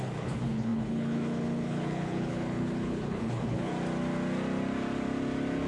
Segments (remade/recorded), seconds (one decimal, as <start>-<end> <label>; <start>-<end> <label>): 0.0-3.7 remade; 3.7-5.7 recorded